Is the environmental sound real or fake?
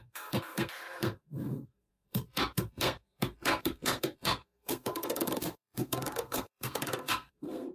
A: fake